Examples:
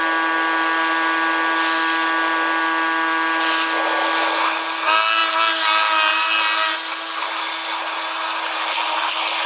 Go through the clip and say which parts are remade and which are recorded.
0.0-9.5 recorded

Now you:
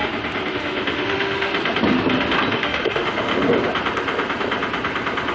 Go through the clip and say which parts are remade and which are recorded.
0.0-0.5 recorded; 0.5-1.5 remade; 1.5-2.5 recorded; 2.5-3.3 remade; 3.3-5.3 recorded

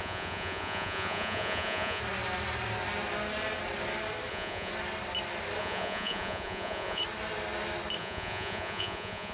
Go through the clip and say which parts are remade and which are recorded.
0.0-2.0 remade; 2.0-4.3 recorded; 4.3-4.7 remade; 4.7-5.6 recorded; 5.6-7.0 remade; 7.0-8.0 recorded; 8.0-9.3 remade

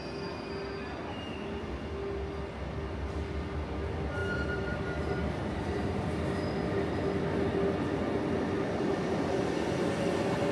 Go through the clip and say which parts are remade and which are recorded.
0.0-1.0 recorded; 1.0-1.7 remade; 1.7-4.2 recorded; 4.2-6.0 remade; 6.0-8.9 recorded; 8.9-9.4 remade; 9.4-10.5 recorded

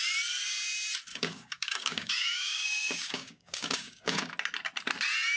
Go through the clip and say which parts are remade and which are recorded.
0.0-1.1 recorded; 1.1-4.3 remade; 4.3-5.4 recorded

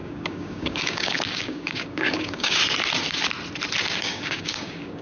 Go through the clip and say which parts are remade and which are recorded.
0.0-2.6 remade; 2.6-4.0 recorded; 4.0-5.0 remade

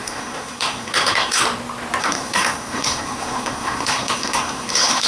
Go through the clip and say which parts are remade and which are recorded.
0.0-1.4 remade; 1.4-2.0 recorded; 2.0-5.1 remade

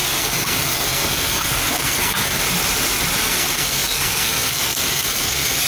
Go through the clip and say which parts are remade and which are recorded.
0.0-2.4 remade; 2.4-3.2 recorded; 3.2-5.7 remade